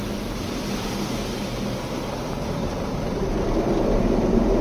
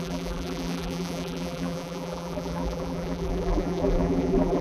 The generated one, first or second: second